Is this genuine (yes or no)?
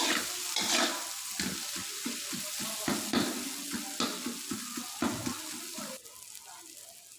yes